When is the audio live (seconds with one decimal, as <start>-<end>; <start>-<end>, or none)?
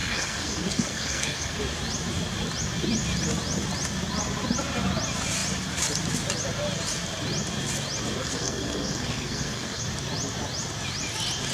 1.6-8.2; 9.8-11.5